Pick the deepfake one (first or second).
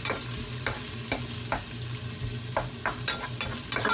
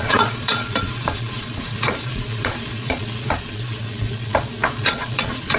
second